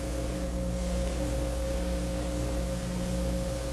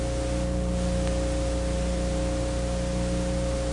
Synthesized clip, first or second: first